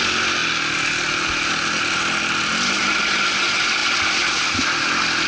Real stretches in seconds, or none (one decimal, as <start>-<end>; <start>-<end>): 0.0-5.3